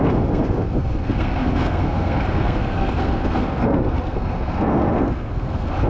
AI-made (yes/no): yes